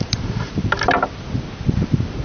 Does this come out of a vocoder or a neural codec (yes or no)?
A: no